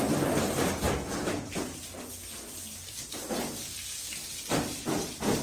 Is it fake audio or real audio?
real